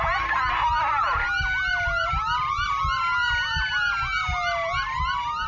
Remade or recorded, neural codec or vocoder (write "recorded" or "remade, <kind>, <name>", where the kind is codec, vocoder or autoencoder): recorded